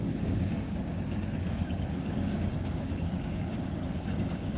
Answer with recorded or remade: remade